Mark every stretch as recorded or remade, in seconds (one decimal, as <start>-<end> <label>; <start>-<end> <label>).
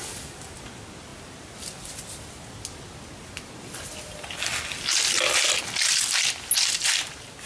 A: 0.0-7.5 recorded